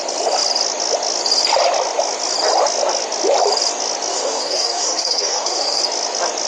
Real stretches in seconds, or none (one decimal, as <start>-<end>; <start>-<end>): 0.0-4.1; 5.8-6.5